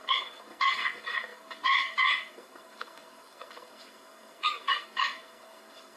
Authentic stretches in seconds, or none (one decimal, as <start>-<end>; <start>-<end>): none